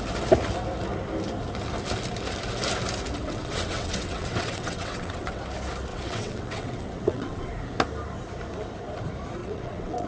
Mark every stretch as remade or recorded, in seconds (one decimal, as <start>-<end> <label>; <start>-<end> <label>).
0.0-3.2 recorded; 3.2-5.4 remade; 5.4-5.9 recorded; 5.9-7.5 remade; 7.5-9.4 recorded; 9.4-10.1 remade